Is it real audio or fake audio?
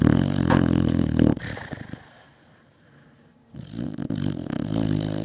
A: real